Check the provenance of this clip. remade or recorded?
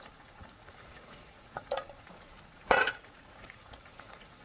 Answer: remade